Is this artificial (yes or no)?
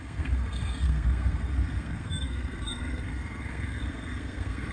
yes